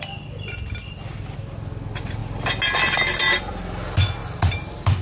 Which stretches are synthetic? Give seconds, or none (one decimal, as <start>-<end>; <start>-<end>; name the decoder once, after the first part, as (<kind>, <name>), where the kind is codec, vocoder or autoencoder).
4.2-5.0 (vocoder, BigVGAN v2)